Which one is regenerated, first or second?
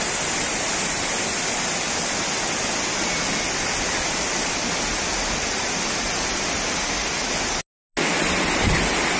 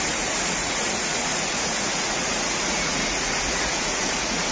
second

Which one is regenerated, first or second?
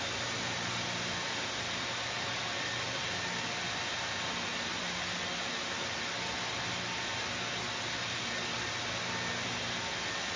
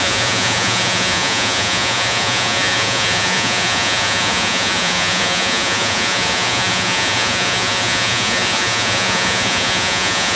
second